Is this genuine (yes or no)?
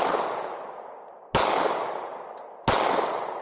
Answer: yes